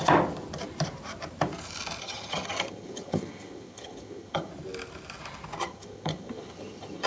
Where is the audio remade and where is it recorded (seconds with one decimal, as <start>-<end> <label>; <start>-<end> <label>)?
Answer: 0.0-2.0 recorded; 2.0-4.5 remade; 4.5-5.6 recorded; 5.6-7.1 remade